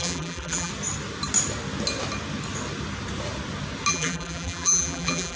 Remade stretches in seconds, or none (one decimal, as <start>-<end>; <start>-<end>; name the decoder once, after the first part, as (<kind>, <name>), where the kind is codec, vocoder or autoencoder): 0.0-0.7 (vocoder, BigVGAN v2); 3.9-5.4